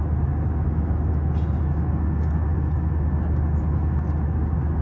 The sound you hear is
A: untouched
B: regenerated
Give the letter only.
A